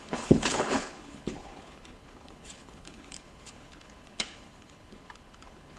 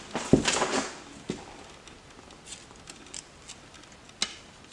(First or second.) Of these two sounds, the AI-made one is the first